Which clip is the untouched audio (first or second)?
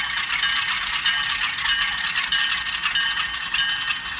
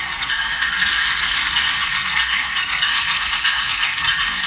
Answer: first